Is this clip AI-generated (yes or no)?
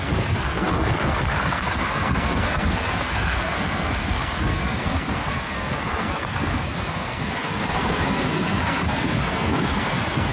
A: yes